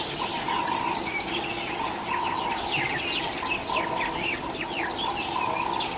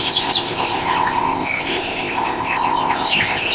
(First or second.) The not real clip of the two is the second